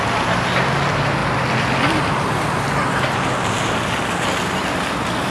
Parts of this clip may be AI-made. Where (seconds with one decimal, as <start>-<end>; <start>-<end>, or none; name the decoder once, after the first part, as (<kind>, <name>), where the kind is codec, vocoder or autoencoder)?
none